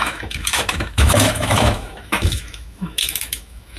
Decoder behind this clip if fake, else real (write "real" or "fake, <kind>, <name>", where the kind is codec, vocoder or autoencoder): fake, autoencoder, DAC-VAE